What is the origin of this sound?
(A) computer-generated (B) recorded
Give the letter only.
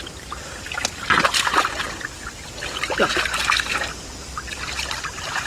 A